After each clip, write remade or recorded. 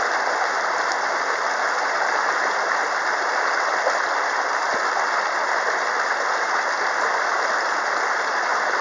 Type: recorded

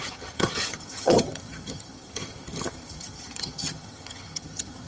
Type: remade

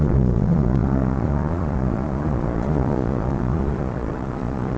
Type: remade